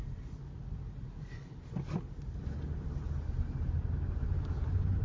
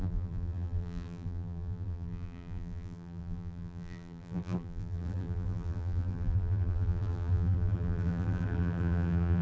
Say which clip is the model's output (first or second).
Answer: second